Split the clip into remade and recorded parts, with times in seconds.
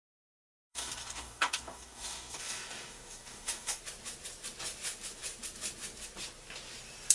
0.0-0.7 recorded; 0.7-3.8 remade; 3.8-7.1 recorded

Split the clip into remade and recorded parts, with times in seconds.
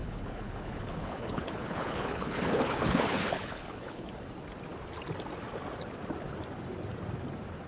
0.0-4.1 remade; 4.1-7.7 recorded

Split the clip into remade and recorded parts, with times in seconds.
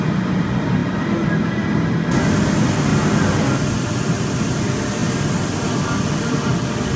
0.0-7.0 recorded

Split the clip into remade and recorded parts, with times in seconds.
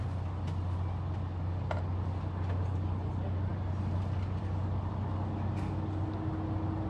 0.0-6.9 recorded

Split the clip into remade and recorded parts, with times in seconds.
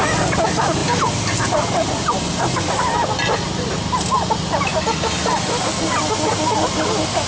0.0-7.3 recorded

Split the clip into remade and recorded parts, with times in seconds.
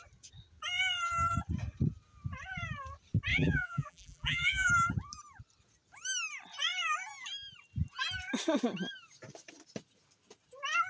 0.0-3.3 recorded; 3.3-4.7 remade; 4.7-10.9 recorded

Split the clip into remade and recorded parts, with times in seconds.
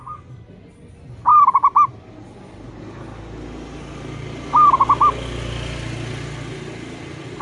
0.0-7.4 recorded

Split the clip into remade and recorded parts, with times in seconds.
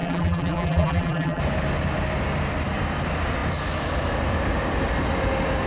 0.0-1.4 remade; 1.4-5.7 recorded